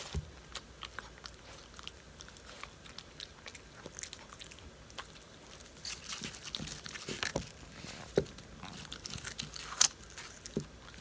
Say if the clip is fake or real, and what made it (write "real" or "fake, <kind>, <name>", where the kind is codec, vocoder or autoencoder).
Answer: real